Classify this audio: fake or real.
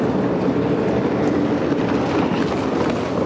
real